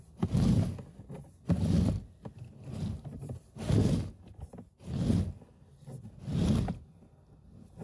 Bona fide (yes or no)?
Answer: yes